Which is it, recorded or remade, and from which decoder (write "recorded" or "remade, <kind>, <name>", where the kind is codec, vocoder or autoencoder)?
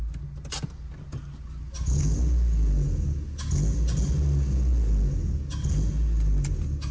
recorded